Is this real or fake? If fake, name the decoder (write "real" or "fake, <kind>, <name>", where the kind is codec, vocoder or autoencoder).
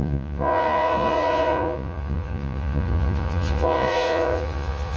fake, vocoder, Vocos